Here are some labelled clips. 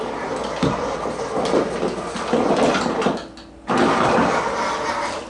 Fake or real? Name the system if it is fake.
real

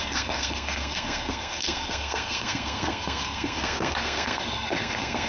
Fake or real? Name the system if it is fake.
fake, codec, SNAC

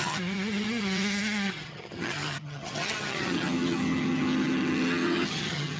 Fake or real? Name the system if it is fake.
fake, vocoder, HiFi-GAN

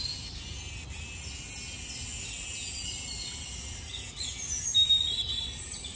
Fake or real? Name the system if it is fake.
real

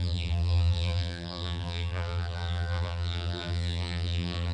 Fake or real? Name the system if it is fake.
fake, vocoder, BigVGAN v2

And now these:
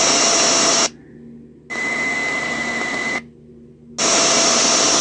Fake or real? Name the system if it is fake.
real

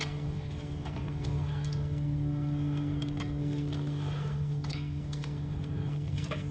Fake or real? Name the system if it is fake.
fake, codec, SNAC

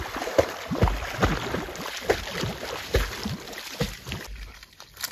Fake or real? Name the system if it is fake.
real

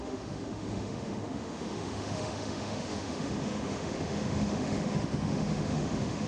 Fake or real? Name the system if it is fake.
fake, autoencoder, DAC-VAE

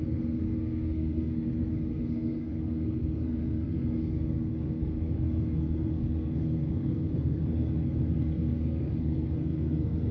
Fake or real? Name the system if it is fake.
fake, codec, SNAC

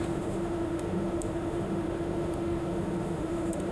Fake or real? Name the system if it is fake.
fake, autoencoder, DAC-VAE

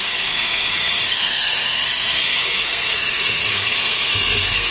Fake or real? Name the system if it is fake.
fake, codec, SNAC